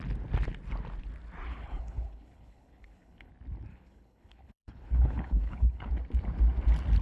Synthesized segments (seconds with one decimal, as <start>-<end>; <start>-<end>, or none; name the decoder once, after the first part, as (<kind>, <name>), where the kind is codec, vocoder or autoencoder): 1.5-3.3 (codec, HILCodec); 3.7-5.9